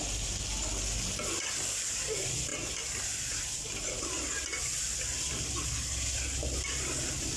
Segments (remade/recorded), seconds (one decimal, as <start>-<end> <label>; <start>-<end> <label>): 0.0-7.4 recorded